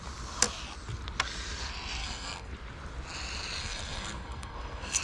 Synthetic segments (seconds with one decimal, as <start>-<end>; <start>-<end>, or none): 2.0-2.5; 3.6-5.0